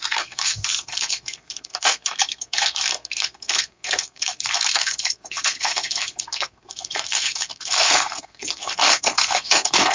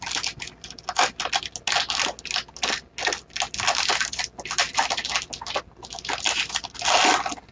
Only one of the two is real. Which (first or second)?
second